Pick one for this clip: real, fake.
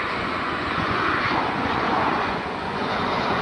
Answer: fake